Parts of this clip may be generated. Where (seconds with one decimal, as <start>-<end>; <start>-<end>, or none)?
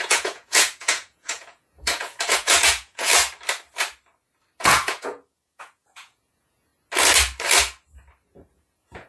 0.0-3.1; 4.6-6.7; 8.5-9.1